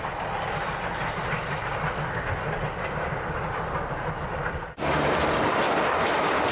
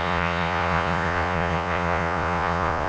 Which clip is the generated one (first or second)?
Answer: second